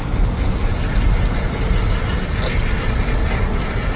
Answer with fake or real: real